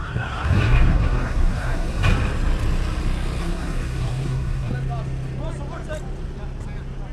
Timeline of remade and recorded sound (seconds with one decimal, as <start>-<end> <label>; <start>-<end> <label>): 0.0-2.1 remade; 2.1-3.4 recorded; 3.4-4.7 remade; 4.7-7.1 recorded